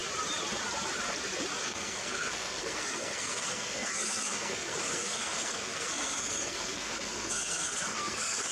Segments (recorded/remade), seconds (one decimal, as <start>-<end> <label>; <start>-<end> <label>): 0.0-1.6 recorded; 1.6-8.5 remade